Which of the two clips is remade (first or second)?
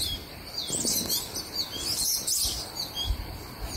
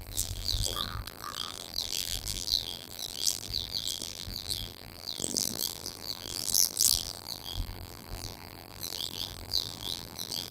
second